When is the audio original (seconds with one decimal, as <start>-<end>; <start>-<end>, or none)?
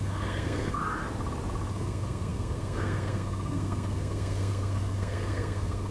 0.8-1.7